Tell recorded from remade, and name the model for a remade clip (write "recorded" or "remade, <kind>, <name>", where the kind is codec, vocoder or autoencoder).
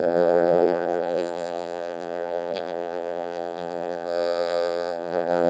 remade, vocoder, BigVGAN v2